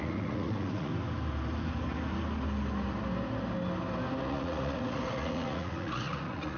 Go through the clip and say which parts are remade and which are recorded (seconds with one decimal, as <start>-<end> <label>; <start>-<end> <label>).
0.0-0.9 remade; 0.9-4.2 recorded; 4.2-6.6 remade